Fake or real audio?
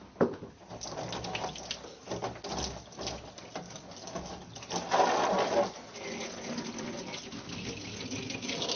real